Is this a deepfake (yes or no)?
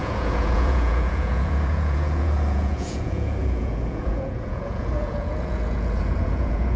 yes